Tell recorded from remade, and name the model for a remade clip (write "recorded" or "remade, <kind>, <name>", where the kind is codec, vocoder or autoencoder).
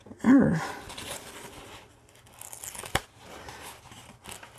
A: recorded